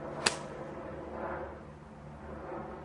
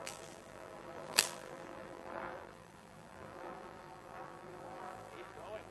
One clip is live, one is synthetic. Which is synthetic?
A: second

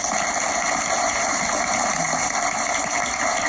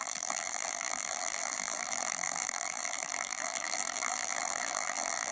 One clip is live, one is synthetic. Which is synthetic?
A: second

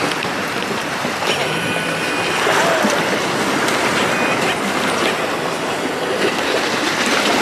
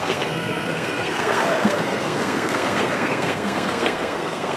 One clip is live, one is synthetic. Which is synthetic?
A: second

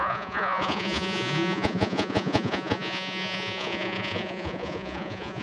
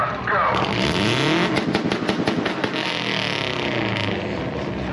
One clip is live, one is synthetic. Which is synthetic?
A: first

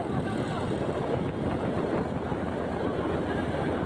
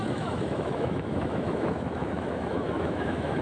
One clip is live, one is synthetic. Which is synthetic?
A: second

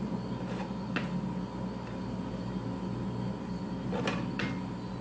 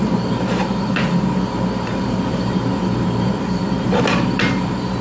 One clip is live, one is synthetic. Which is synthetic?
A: second